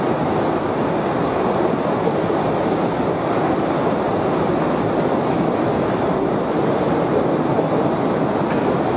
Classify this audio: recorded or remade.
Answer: recorded